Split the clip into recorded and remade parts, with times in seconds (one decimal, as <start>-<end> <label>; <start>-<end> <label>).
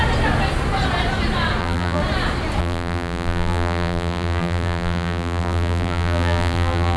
0.0-1.6 recorded; 1.6-2.0 remade; 2.0-2.6 recorded; 2.6-7.0 remade